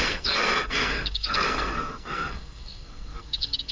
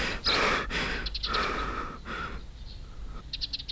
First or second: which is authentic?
second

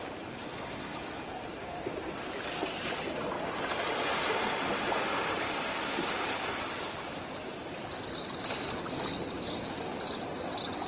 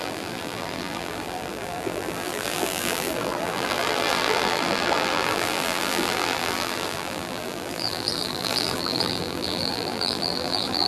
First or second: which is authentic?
first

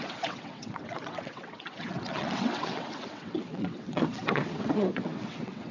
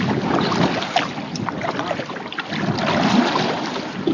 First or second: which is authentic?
second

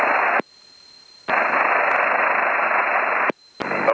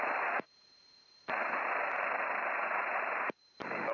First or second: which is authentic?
first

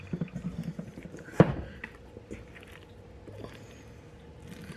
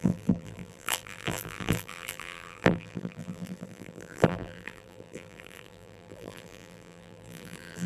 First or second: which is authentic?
first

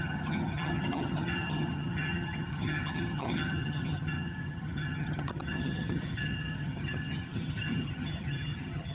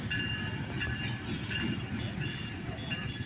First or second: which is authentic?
second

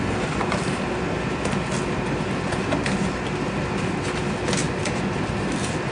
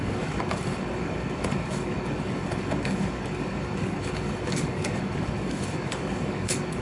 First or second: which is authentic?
first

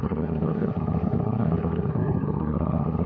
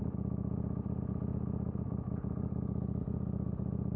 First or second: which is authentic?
second